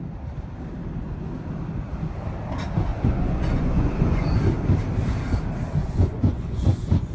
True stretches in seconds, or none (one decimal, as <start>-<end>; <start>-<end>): 0.0-2.9; 4.4-5.8